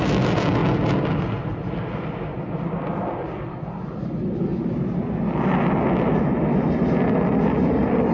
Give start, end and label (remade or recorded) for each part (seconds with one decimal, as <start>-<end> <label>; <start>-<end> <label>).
0.0-8.1 recorded